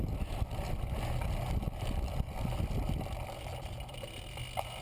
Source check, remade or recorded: recorded